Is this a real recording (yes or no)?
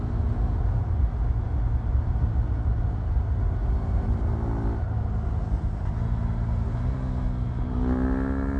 yes